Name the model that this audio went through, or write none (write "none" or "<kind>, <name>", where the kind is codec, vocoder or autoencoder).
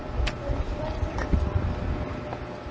vocoder, BigVGAN v2